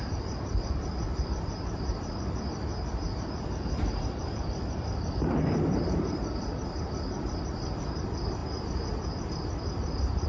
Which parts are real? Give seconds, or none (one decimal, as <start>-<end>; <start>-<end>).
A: 8.4-9.3